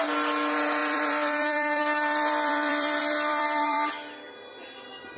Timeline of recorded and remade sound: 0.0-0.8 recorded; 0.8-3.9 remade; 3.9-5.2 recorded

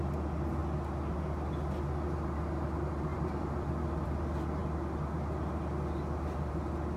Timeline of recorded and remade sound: 0.0-3.1 recorded; 3.1-4.1 remade; 4.1-7.0 recorded

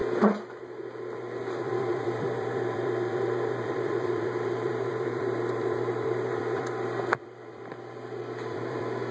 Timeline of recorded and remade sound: 0.0-1.6 recorded; 1.6-9.1 remade